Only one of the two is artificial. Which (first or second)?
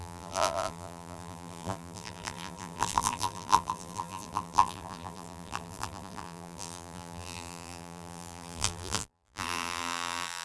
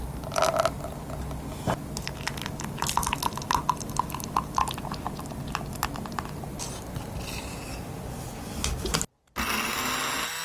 first